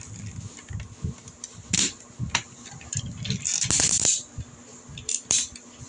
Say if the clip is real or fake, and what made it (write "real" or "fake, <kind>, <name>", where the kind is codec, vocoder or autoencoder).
real